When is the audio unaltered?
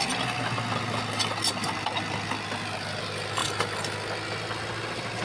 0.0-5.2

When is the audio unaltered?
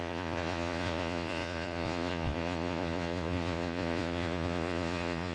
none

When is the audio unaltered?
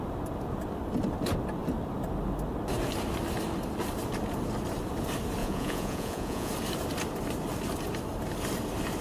0.0-5.4; 6.5-9.0